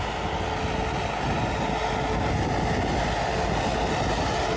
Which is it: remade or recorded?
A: recorded